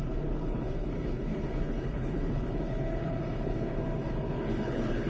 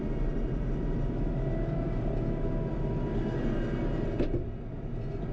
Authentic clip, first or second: second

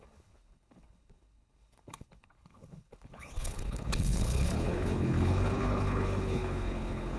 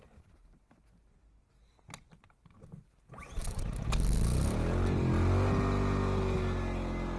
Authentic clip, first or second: second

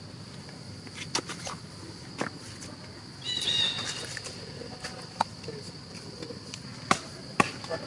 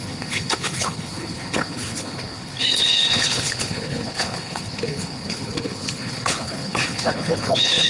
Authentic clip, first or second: first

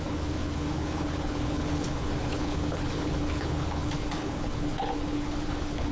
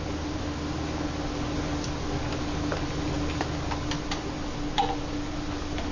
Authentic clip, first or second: second